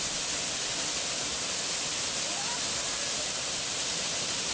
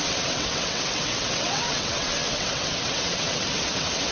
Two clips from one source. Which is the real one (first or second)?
first